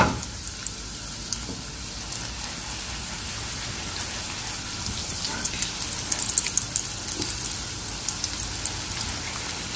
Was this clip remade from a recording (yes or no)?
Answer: no